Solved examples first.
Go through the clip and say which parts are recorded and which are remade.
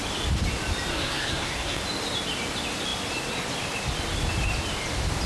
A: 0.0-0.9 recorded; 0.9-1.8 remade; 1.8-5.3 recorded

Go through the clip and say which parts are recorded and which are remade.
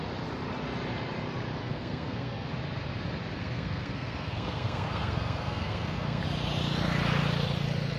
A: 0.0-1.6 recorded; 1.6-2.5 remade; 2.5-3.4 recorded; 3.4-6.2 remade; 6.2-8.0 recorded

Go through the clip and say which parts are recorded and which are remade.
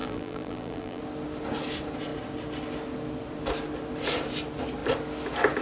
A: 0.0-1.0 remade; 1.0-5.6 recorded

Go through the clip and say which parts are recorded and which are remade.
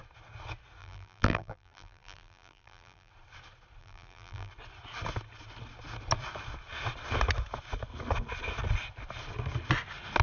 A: 0.0-0.8 recorded; 0.8-3.1 remade; 3.1-3.8 recorded; 3.8-4.5 remade; 4.5-10.2 recorded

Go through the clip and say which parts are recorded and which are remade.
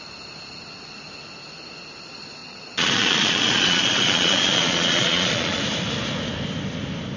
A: 0.0-2.4 recorded; 2.4-5.6 remade; 5.6-7.2 recorded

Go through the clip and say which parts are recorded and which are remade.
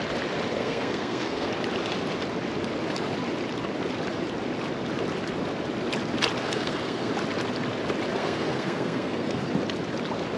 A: 0.0-0.6 recorded; 0.6-1.5 remade; 1.5-6.4 recorded; 6.4-7.1 remade; 7.1-8.2 recorded; 8.2-9.5 remade; 9.5-10.4 recorded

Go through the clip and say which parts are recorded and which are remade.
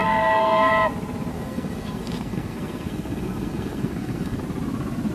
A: 0.0-0.7 remade; 0.7-1.3 recorded; 1.3-4.4 remade; 4.4-5.1 recorded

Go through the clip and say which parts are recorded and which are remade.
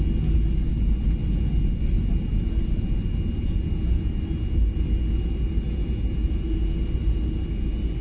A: 0.0-8.0 recorded